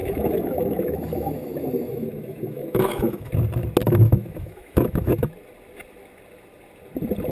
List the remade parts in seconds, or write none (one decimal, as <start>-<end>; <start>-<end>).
0.0-3.3; 3.8-5.3